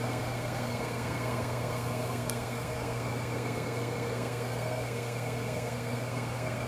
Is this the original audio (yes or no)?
no